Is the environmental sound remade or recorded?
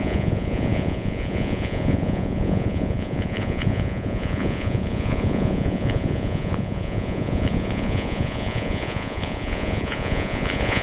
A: remade